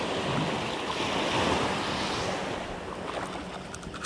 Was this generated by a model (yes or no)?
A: no